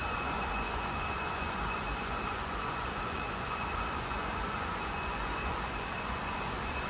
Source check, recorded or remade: remade